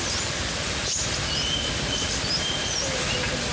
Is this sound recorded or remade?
recorded